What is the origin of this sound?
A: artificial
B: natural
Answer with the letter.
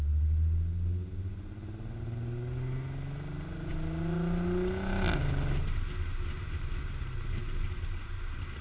B